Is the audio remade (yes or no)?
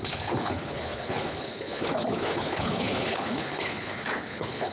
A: yes